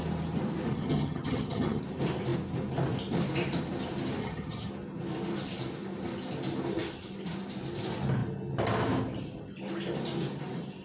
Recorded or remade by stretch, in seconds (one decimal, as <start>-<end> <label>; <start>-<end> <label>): 0.0-0.7 recorded; 0.7-1.8 remade; 1.8-4.2 recorded; 4.2-4.7 remade; 4.7-10.8 recorded